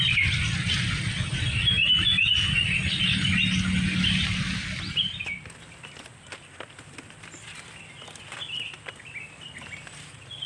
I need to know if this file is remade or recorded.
recorded